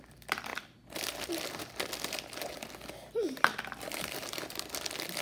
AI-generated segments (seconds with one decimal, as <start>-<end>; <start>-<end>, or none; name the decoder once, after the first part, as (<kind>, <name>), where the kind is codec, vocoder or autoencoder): 0.5-1.6 (vocoder, BigVGAN v2); 3.5-4.8